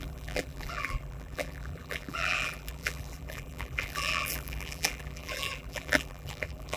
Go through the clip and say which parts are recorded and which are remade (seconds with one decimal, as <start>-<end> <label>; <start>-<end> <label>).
0.0-6.8 remade